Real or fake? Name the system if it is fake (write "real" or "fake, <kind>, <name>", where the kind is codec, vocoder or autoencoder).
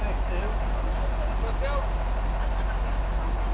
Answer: real